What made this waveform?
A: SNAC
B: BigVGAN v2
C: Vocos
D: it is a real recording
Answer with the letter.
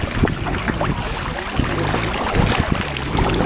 D